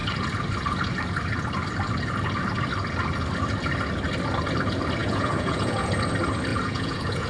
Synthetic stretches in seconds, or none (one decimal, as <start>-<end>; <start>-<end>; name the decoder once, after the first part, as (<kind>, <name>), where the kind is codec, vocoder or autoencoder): 5.0-5.9 (vocoder, Vocos); 6.5-7.3